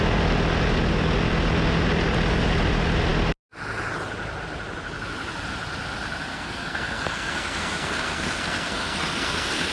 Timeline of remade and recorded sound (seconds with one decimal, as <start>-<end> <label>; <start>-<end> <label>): 0.0-6.3 recorded; 6.3-9.7 remade